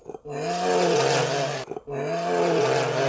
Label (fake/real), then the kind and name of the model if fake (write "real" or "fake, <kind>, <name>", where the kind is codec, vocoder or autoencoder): real